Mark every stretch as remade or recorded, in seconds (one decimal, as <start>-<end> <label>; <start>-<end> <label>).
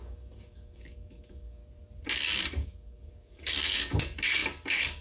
0.0-1.6 remade; 1.6-2.4 recorded; 2.4-5.0 remade